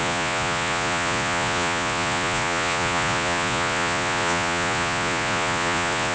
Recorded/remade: remade